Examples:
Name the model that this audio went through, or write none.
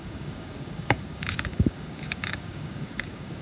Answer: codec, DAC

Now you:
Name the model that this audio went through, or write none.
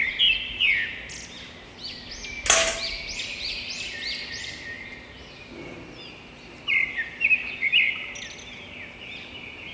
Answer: none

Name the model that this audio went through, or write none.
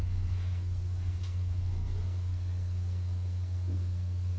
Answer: codec, SNAC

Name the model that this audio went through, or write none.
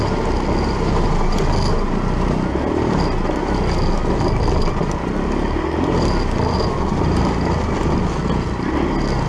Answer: none